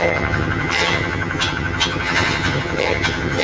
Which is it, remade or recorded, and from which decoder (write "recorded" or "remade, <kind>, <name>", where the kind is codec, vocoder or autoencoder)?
remade, vocoder, HiFi-GAN